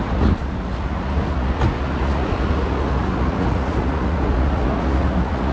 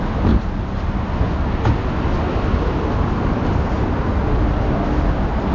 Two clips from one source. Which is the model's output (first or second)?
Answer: first